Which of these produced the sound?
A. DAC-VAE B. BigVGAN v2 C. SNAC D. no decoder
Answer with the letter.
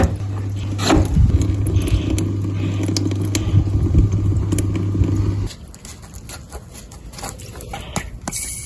D